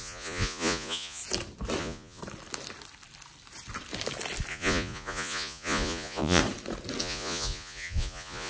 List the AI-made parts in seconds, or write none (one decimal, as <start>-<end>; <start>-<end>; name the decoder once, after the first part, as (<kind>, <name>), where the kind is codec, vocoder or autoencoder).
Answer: 0.0-1.2 (vocoder, Vocos); 1.8-2.2; 4.5-6.4; 7.0-8.5